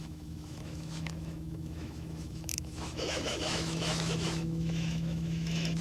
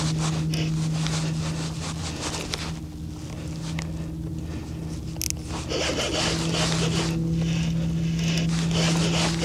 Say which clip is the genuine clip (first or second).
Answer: second